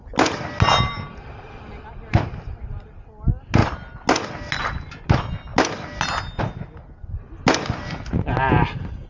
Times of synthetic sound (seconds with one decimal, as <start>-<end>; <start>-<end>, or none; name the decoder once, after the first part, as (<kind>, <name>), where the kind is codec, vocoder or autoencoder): none